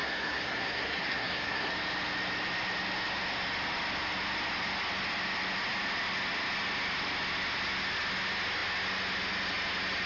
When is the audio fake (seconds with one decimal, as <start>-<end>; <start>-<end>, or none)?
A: 0.0-1.7